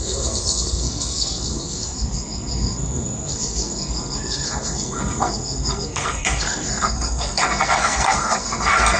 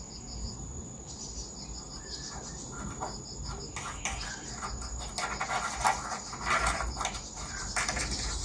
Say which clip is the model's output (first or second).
first